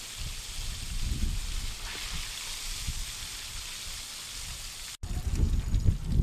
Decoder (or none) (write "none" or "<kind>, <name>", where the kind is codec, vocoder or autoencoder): none